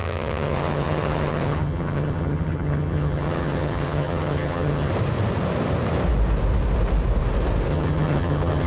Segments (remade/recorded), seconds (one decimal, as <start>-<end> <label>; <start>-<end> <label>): 0.0-4.9 remade; 4.9-7.7 recorded; 7.7-8.7 remade